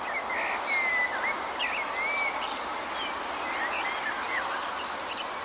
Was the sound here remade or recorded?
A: recorded